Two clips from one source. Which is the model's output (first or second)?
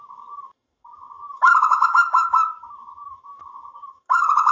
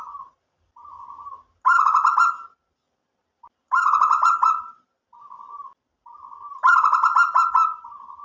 first